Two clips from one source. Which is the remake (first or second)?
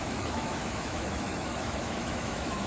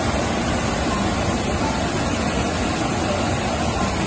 first